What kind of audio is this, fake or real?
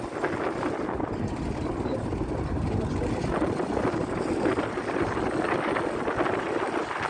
real